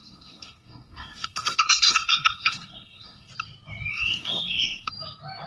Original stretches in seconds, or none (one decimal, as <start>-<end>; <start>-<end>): 3.3-3.9; 4.9-5.5